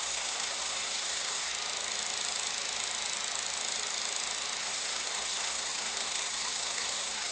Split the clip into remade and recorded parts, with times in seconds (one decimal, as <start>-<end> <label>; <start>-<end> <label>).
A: 0.0-1.5 remade; 1.5-4.6 recorded; 4.6-7.3 remade

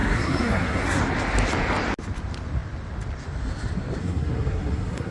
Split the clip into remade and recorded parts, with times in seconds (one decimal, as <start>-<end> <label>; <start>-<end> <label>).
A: 0.0-1.0 remade; 1.0-4.0 recorded; 4.0-5.1 remade